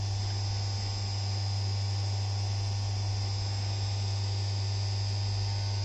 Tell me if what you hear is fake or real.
real